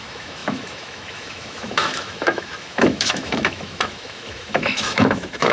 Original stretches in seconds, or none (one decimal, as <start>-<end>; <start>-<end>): none